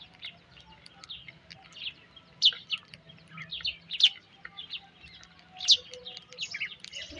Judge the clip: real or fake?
real